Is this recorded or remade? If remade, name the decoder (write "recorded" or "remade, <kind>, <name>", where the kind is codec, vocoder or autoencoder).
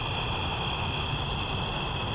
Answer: recorded